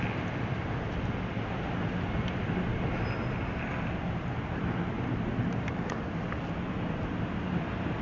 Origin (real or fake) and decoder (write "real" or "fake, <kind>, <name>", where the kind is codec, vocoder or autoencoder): real